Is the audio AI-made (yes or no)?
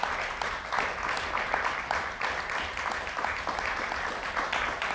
no